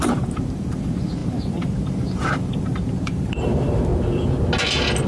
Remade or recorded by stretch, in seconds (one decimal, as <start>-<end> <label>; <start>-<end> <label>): 0.0-3.9 remade; 3.9-5.1 recorded